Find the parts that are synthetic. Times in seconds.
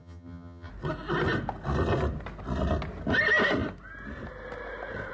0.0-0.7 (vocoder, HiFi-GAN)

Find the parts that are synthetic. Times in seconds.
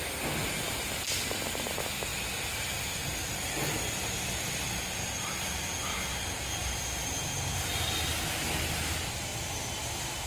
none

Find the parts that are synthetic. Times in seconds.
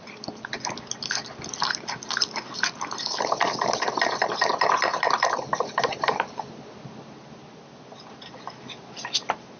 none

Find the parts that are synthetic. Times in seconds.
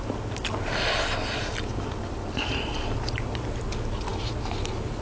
none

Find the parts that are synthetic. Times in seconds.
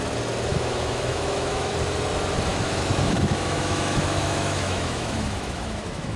0.5-1.7 (autoencoder, DAC-VAE); 2.5-6.2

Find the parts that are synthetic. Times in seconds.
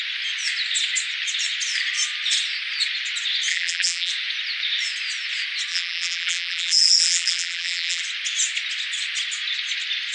3.5-4.1 (vocoder, BigVGAN v2); 5.7-8.0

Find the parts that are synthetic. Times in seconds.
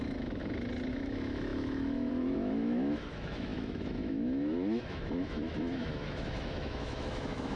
0.0-0.4 (autoencoder, DAC-VAE); 0.9-7.6